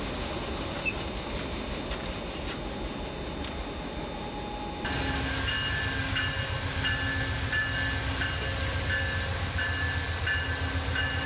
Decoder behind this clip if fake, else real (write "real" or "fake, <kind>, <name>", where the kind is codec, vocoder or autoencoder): real